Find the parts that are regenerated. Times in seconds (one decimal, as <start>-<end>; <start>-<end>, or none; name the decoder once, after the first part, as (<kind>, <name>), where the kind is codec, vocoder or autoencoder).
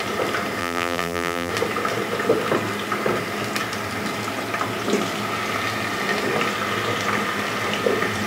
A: 0.6-1.5 (vocoder, BigVGAN v2)